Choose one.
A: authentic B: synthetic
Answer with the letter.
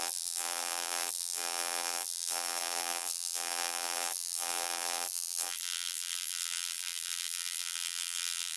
B